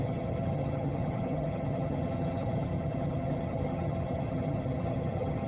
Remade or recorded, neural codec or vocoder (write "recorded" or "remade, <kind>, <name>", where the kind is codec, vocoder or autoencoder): remade, vocoder, HiFi-GAN